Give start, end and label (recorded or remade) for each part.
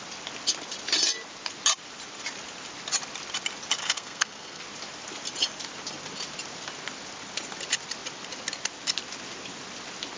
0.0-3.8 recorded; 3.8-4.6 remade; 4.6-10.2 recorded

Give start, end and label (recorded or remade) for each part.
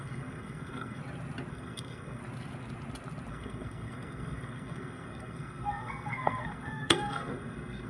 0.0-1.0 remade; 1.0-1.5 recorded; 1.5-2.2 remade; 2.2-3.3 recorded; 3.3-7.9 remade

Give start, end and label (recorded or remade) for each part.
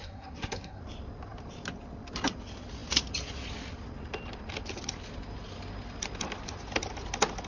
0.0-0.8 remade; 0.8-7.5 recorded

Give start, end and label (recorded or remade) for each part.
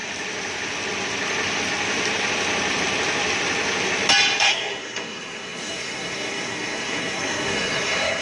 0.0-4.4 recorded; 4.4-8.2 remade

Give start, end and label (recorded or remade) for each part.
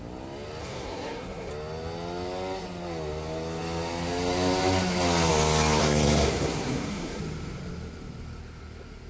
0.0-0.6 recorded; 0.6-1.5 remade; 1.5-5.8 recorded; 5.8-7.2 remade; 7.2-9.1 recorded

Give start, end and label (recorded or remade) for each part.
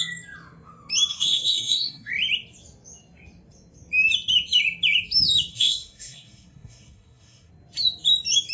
0.0-1.1 recorded; 1.1-2.1 remade; 2.1-5.5 recorded; 5.5-7.5 remade; 7.5-8.5 recorded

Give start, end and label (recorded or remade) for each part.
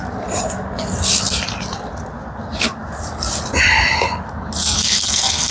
0.0-4.6 recorded; 4.6-5.5 remade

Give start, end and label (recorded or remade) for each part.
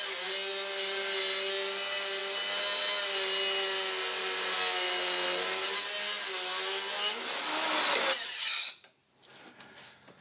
0.0-10.2 recorded